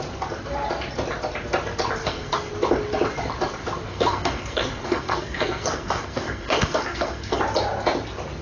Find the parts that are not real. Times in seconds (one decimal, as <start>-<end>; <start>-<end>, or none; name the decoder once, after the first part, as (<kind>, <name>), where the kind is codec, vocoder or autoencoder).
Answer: 2.0-2.5 (codec, SNAC); 3.9-7.4